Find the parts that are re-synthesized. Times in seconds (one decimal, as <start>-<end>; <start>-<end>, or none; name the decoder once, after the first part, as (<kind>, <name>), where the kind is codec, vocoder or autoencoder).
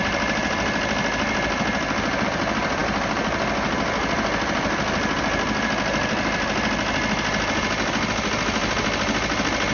none